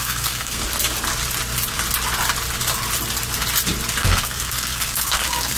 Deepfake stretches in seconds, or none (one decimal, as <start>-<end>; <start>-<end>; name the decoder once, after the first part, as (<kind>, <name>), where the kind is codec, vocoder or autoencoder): 0.0-0.6 (codec, SNAC); 4.0-5.6